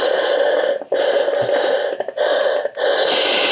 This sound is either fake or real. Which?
real